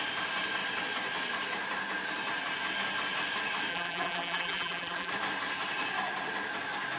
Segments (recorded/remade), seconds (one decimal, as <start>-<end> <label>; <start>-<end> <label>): 0.0-3.7 recorded; 3.7-5.1 remade; 5.1-7.0 recorded